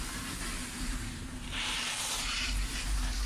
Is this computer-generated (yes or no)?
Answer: yes